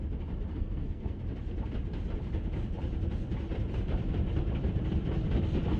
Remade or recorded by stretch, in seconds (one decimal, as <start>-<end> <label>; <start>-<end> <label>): 0.0-0.5 recorded; 0.5-1.2 remade; 1.2-5.8 recorded